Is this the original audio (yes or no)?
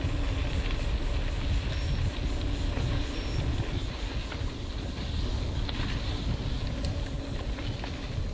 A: yes